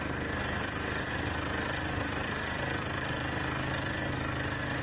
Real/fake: real